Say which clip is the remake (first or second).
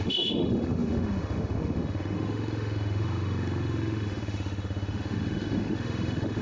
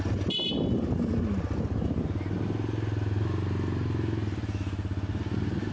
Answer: first